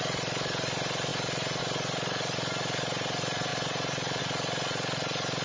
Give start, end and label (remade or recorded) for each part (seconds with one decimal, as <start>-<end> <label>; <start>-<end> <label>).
0.0-5.4 recorded